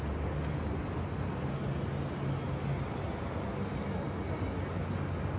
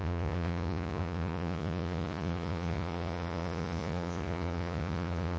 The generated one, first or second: second